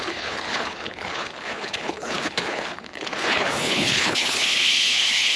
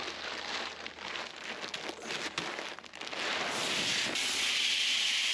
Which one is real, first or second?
second